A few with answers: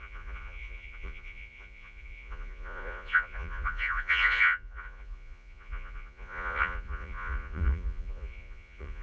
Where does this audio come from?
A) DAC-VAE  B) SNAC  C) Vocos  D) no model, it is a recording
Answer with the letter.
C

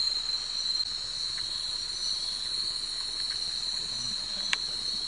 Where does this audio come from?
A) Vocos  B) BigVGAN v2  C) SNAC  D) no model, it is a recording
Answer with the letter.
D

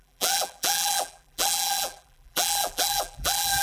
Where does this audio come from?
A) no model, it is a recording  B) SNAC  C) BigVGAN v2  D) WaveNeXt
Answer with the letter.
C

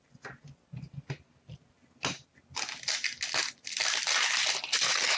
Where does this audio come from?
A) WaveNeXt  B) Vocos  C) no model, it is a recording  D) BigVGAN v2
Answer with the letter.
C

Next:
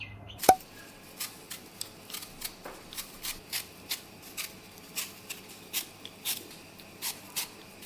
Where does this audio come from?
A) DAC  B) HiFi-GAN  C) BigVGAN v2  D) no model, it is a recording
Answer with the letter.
D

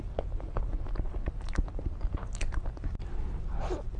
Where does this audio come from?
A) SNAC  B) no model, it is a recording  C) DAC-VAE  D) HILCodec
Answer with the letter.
B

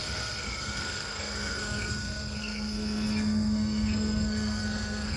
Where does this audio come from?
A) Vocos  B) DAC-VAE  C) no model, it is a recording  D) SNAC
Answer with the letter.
D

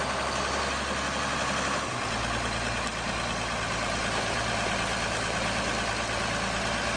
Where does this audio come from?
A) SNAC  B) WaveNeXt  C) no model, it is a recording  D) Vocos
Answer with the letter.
C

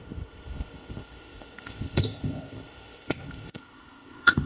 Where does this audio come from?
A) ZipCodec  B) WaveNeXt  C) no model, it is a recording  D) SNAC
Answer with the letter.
A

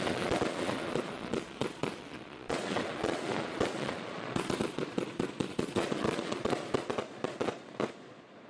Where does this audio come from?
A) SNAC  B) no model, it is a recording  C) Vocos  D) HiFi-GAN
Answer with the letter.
C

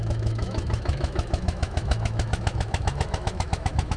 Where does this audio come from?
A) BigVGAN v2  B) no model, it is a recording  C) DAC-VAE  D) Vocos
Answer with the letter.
C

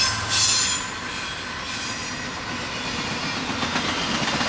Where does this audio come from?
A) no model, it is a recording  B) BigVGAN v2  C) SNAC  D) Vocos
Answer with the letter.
A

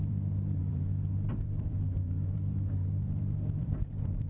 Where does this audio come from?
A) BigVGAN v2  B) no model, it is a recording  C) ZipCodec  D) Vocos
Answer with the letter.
A